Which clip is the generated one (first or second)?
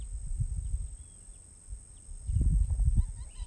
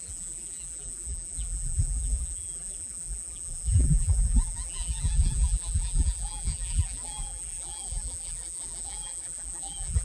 second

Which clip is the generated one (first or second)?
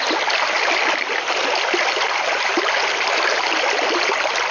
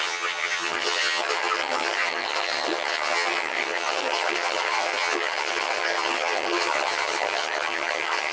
second